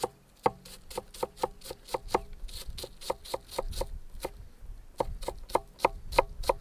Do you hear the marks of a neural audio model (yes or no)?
no